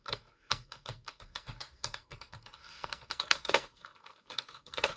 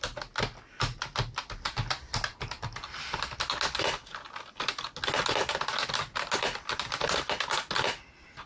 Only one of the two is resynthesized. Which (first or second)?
first